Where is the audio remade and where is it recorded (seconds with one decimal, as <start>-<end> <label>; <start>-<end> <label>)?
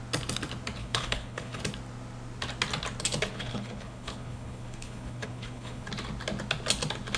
0.0-0.8 recorded; 0.8-1.6 remade; 1.6-3.3 recorded; 3.3-5.9 remade; 5.9-7.2 recorded